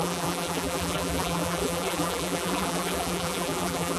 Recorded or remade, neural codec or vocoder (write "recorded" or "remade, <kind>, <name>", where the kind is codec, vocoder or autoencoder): remade, vocoder, BigVGAN v2